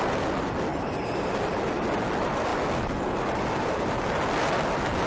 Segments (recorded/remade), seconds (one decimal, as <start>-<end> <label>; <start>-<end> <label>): 0.0-5.1 recorded